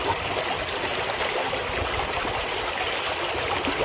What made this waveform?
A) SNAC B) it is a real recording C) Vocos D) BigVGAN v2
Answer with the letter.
B